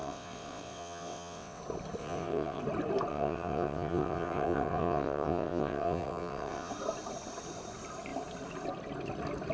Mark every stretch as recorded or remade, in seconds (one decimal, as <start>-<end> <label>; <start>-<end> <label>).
0.0-1.6 remade; 1.6-2.0 recorded; 2.0-2.6 remade; 2.6-3.1 recorded; 3.1-6.7 remade; 6.7-9.5 recorded